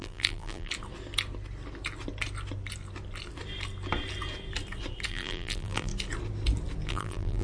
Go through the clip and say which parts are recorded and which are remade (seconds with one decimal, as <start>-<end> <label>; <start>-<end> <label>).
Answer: 0.0-0.7 remade; 0.7-5.1 recorded; 5.1-5.9 remade; 5.9-6.9 recorded; 6.9-7.4 remade